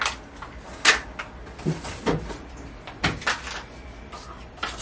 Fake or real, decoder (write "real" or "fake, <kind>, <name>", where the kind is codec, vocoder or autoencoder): real